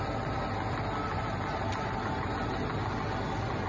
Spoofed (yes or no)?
no